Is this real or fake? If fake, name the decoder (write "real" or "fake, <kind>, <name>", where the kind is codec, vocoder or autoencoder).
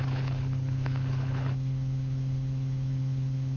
fake, codec, HILCodec